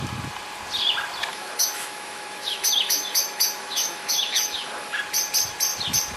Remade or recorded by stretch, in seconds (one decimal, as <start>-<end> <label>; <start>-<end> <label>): 0.0-1.3 recorded; 1.3-5.0 remade; 5.0-6.2 recorded